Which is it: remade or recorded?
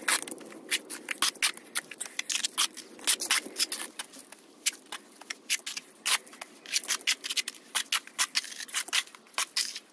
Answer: recorded